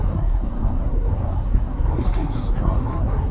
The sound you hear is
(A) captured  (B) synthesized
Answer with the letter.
B